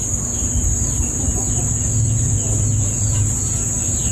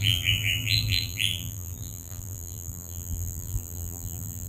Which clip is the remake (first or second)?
second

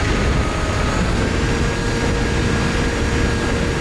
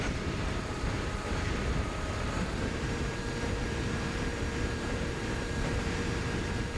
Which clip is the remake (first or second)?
second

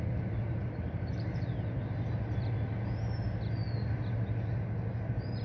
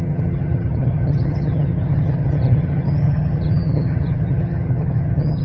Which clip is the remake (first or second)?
second